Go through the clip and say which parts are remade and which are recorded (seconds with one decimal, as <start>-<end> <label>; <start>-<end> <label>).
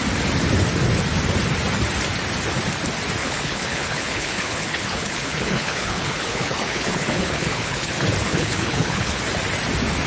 0.0-3.2 recorded; 3.2-7.9 remade; 7.9-8.3 recorded; 8.3-9.2 remade; 9.2-10.1 recorded